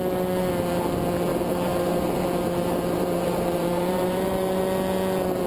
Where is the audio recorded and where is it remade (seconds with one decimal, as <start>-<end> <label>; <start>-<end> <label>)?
0.0-1.3 recorded; 1.3-4.6 remade; 4.6-5.5 recorded